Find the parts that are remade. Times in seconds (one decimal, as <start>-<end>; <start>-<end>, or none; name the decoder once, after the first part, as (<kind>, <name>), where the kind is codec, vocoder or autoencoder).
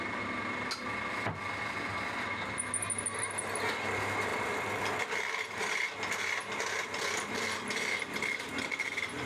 4.3-5.2 (vocoder, BigVGAN v2)